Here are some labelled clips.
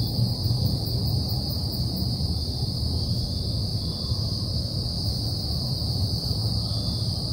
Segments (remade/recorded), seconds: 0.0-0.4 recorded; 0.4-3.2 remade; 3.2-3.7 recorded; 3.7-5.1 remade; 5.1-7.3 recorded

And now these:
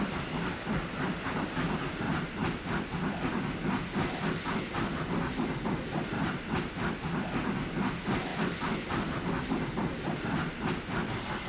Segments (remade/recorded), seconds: 0.0-11.5 remade